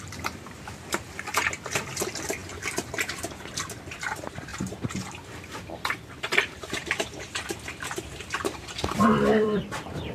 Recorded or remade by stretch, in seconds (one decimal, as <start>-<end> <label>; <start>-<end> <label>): 0.0-4.5 remade; 4.5-5.1 recorded; 5.1-10.1 remade